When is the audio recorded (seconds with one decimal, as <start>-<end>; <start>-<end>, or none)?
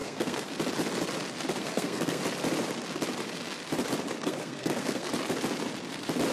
0.5-1.6; 2.2-4.2; 5.1-6.3